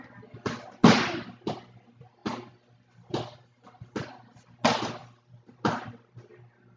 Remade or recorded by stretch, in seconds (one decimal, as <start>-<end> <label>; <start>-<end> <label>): 0.0-6.8 recorded

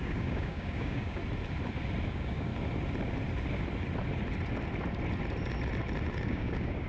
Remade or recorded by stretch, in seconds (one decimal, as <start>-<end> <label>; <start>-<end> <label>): 0.0-1.2 remade; 1.2-2.1 recorded; 2.1-2.5 remade; 2.5-6.1 recorded; 6.1-6.9 remade

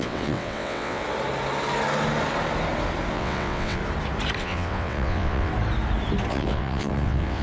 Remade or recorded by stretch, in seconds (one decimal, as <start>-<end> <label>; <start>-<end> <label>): 0.0-1.0 remade; 1.0-3.1 recorded; 3.1-3.8 remade; 3.8-4.4 recorded; 4.4-5.5 remade; 5.5-6.3 recorded; 6.3-7.4 remade